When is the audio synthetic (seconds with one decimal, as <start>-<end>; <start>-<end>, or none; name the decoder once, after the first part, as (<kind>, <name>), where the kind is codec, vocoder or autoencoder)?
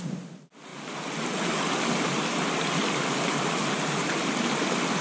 none